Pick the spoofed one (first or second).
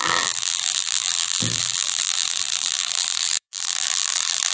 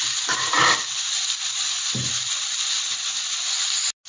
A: first